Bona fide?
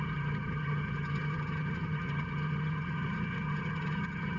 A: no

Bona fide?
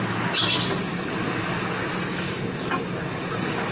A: yes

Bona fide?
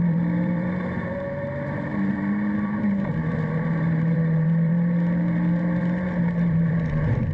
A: no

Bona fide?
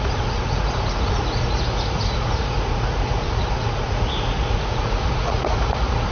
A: no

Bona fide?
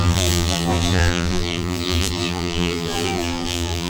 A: no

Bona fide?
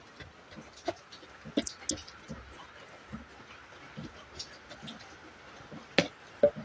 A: yes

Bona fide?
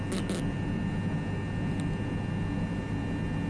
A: yes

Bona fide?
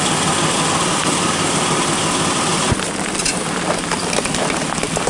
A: yes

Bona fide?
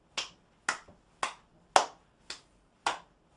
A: yes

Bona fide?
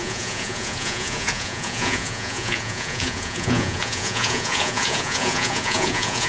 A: no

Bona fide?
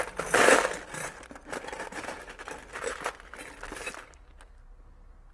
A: yes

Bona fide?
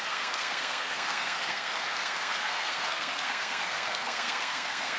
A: no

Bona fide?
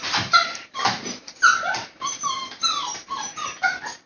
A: no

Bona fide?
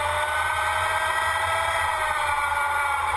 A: yes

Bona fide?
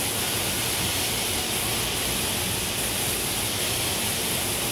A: yes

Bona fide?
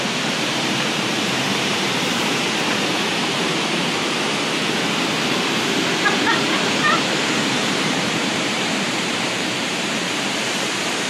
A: no